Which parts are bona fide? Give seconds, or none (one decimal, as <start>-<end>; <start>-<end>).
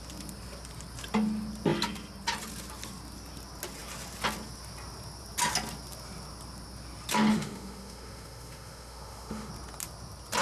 0.0-7.3; 9.5-10.4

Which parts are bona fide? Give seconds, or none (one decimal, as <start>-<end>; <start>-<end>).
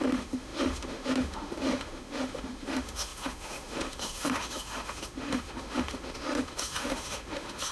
none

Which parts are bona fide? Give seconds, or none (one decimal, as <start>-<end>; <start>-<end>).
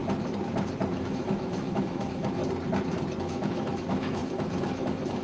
0.0-1.0; 2.4-3.2